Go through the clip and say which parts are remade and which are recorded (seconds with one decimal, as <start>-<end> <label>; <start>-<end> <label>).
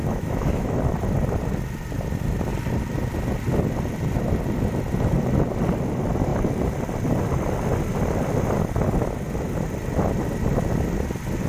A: 0.0-0.8 remade; 0.8-11.5 recorded